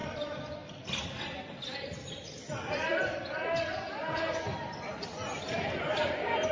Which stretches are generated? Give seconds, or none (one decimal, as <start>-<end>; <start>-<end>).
none